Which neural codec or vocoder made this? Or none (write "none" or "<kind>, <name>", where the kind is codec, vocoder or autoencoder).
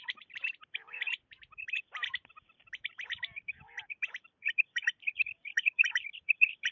vocoder, BigVGAN v2